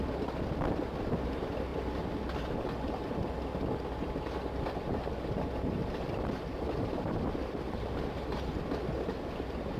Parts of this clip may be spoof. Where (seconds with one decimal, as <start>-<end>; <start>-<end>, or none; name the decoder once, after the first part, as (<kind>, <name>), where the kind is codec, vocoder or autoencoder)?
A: 1.7-2.9 (vocoder, BigVGAN v2); 5.8-8.5